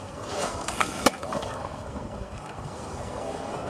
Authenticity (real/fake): fake